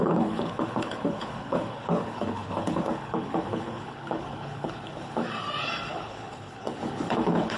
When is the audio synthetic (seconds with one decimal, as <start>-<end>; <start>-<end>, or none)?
0.0-5.2; 5.9-7.6